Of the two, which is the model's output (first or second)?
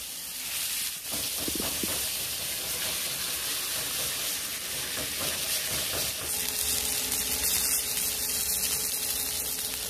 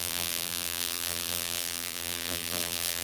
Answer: second